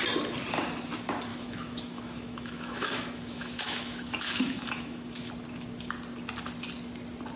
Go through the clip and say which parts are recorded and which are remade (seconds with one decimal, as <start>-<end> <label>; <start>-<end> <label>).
0.0-1.3 recorded; 1.3-5.3 remade; 5.3-7.4 recorded

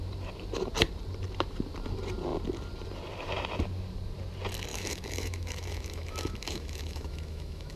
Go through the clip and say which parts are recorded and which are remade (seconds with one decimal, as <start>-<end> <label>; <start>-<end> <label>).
0.0-4.7 recorded; 4.7-7.8 remade